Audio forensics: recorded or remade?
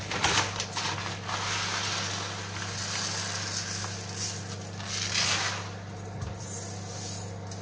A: recorded